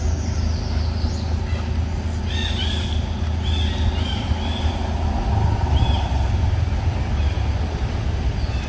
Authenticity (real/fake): real